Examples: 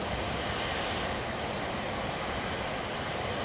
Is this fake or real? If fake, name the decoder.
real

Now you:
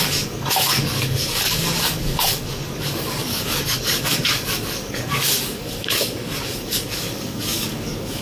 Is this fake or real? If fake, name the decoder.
fake, codec, DAC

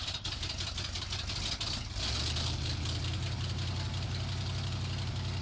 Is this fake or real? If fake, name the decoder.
real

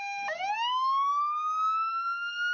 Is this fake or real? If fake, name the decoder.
fake, codec, DAC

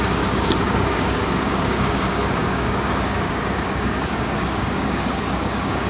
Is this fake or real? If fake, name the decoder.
fake, codec, DAC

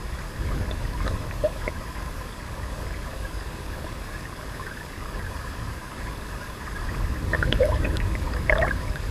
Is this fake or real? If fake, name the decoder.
fake, codec, DAC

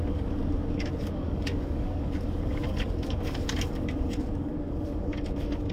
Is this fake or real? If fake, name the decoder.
fake, codec, DAC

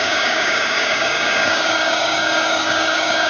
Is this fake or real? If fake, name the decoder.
fake, codec, DAC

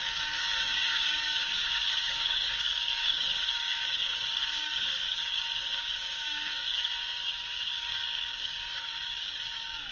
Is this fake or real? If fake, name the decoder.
fake, codec, DAC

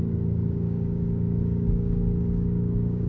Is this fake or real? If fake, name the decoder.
fake, codec, DAC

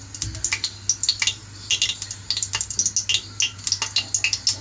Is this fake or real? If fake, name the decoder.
real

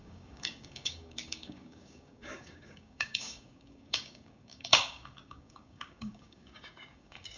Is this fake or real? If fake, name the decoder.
fake, codec, DAC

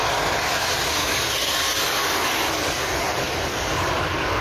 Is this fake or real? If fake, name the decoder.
fake, codec, DAC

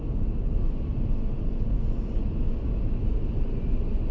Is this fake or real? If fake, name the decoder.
real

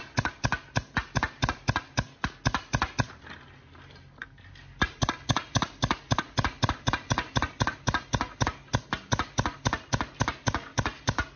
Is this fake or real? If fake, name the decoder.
real